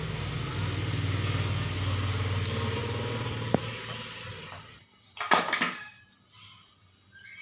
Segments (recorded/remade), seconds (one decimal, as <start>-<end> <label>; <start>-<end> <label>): 0.0-2.8 recorded; 2.8-5.4 remade; 5.4-7.4 recorded